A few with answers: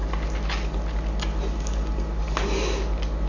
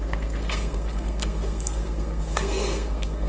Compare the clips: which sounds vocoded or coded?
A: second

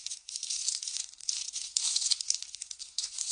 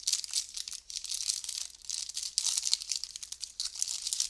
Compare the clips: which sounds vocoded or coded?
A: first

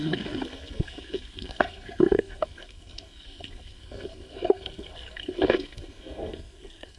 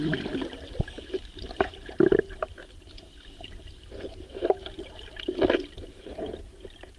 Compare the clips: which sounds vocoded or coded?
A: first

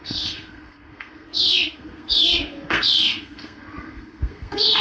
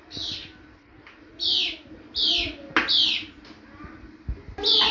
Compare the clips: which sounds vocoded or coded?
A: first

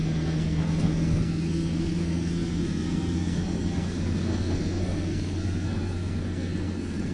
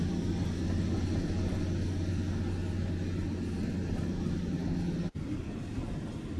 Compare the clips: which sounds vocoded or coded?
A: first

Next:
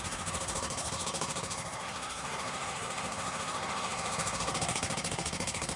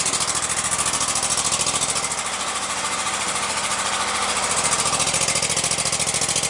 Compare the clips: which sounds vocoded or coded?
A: first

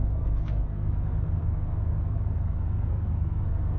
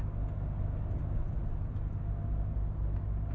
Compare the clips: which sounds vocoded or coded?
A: first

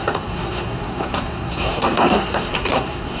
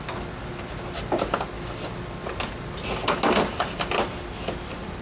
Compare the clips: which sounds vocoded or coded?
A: first